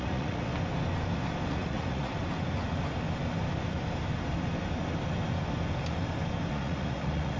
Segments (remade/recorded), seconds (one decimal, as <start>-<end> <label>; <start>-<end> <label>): 0.0-0.5 remade; 0.5-1.5 recorded; 1.5-2.1 remade; 2.1-6.5 recorded; 6.5-7.4 remade